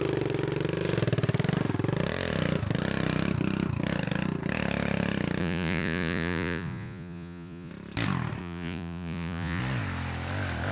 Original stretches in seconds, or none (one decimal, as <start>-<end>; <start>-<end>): 0.0-5.4; 7.7-8.4; 9.6-10.7